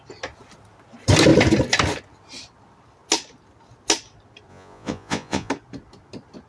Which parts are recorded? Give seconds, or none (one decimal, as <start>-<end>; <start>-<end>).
0.0-4.5; 5.5-6.5